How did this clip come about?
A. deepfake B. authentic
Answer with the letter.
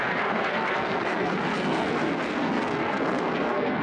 A